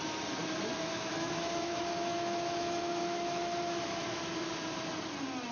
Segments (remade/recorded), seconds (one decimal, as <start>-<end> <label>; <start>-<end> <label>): 0.0-0.9 recorded; 0.9-4.2 remade; 4.2-5.5 recorded